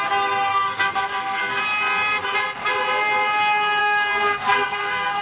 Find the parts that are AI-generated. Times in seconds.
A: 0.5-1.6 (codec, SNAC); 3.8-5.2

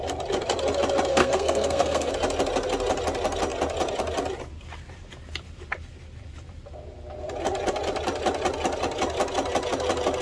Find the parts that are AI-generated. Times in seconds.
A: 1.1-2.1 (codec, SNAC)

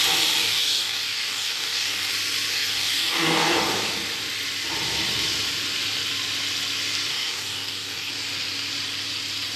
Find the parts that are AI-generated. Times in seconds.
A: 0.4-2.1 (codec, DAC); 2.5-3.9; 7.1-8.1